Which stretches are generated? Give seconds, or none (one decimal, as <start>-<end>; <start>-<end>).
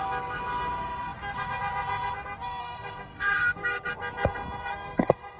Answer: 2.6-3.9; 4.6-5.4